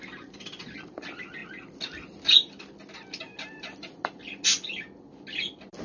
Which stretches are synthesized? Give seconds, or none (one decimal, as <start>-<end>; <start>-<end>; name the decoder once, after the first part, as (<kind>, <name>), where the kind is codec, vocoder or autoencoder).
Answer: none